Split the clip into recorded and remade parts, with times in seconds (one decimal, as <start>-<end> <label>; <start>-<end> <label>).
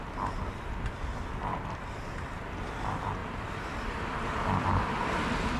0.0-1.5 recorded; 1.5-2.4 remade; 2.4-3.2 recorded; 3.2-5.1 remade; 5.1-5.6 recorded